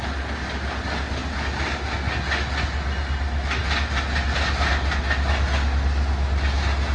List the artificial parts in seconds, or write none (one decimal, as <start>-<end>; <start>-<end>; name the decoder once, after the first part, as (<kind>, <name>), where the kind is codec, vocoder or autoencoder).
none